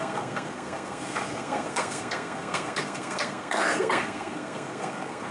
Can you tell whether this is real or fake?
fake